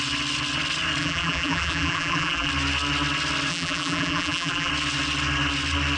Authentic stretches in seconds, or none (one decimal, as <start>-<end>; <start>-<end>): 0.0-1.0; 2.5-3.5; 4.7-6.0